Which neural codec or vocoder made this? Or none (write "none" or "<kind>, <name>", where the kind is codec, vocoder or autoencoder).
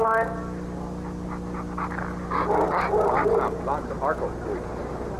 none